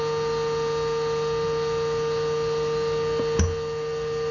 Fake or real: real